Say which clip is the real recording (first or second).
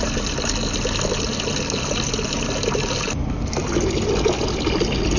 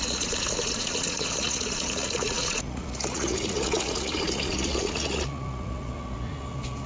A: first